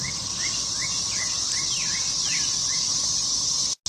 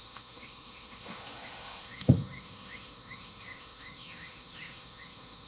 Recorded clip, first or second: first